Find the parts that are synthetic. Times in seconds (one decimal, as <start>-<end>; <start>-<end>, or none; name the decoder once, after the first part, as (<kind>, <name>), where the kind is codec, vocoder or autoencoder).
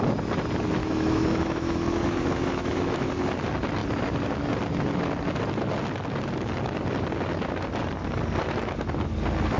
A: 0.8-3.1 (autoencoder, DAC-VAE)